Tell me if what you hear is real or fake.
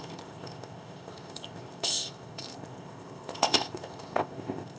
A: fake